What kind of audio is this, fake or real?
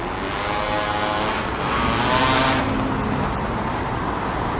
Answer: real